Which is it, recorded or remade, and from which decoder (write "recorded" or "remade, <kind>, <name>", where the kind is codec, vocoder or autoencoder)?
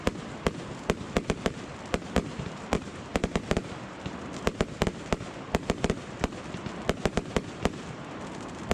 remade, vocoder, BigVGAN v2